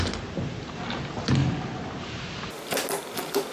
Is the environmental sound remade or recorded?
recorded